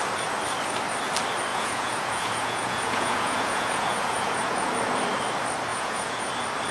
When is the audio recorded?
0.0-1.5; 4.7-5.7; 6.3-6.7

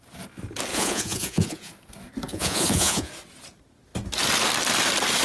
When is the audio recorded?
0.0-0.7; 1.7-2.3; 3.1-5.2

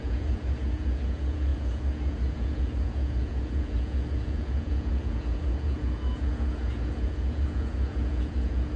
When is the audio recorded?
none

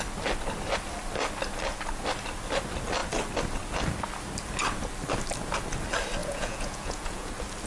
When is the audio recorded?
0.0-6.2; 7.3-7.7

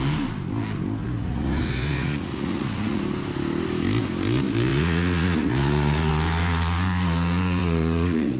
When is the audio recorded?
0.0-1.0; 3.0-4.7; 6.1-7.6

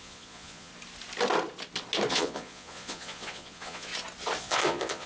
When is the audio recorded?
0.7-2.1; 3.9-4.4

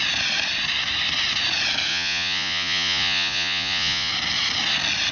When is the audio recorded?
0.0-1.9; 4.1-5.1